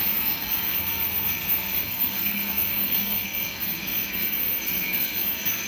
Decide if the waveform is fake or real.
fake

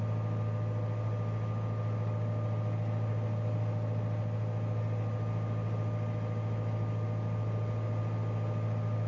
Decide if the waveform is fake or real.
real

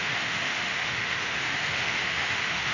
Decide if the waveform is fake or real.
fake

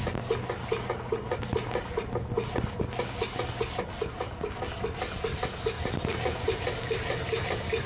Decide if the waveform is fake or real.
real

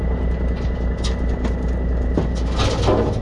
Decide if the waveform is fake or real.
real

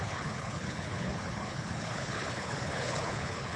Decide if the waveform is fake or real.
fake